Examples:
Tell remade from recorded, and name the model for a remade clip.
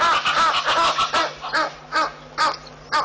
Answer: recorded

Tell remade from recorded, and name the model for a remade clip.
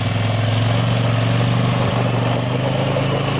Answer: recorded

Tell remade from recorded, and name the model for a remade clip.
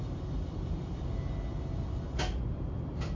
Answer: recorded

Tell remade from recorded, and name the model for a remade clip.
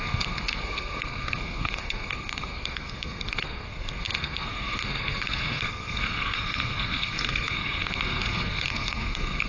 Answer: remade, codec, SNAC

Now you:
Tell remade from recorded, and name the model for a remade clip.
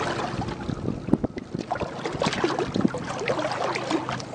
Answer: recorded